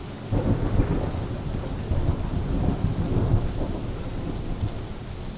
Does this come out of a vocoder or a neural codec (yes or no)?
no